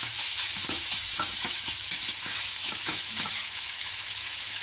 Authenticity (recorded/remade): remade